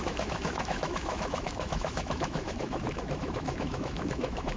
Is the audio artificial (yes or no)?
yes